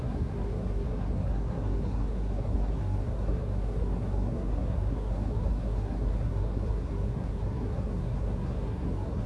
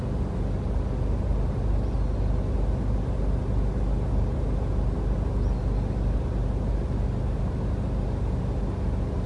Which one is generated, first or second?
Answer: first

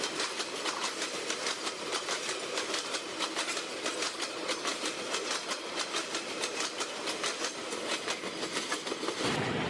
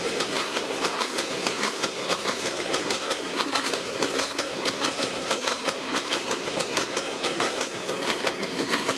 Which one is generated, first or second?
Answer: second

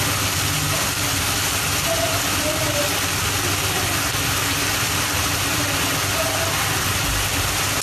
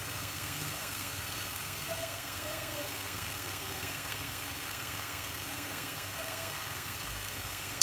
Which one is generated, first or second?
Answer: second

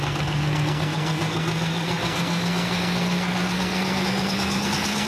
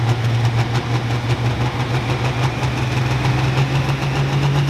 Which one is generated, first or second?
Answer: first